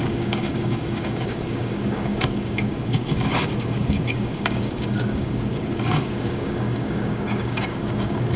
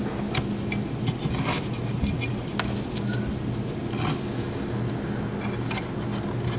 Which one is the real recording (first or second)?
second